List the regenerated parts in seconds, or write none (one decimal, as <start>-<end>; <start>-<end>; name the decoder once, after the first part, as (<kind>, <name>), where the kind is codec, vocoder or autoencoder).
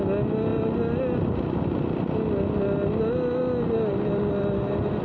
none